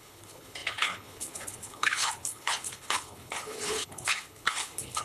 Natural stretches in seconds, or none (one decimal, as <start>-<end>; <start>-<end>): none